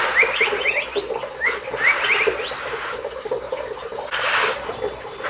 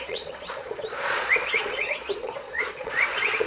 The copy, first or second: second